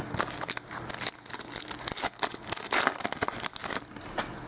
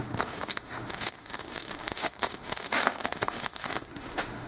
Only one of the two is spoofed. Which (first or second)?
second